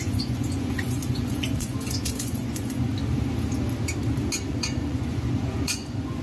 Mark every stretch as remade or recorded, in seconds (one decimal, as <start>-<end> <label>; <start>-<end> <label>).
0.0-2.9 remade; 2.9-4.5 recorded; 4.5-6.2 remade

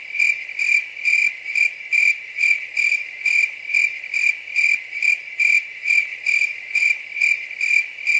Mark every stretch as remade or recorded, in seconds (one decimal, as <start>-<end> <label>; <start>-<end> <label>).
0.0-8.2 recorded

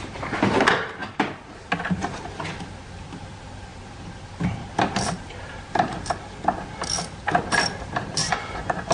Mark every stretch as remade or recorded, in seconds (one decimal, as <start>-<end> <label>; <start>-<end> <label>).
0.0-8.2 recorded; 8.2-8.9 remade

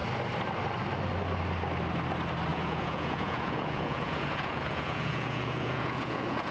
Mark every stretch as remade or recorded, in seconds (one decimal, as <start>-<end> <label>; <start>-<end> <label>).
0.0-2.5 recorded; 2.5-6.5 remade

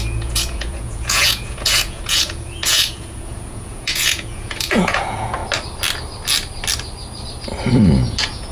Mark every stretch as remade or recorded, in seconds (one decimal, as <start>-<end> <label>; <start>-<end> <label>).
0.0-5.4 remade; 5.4-7.9 recorded; 7.9-8.5 remade